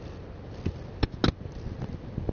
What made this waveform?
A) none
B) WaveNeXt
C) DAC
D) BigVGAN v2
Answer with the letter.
A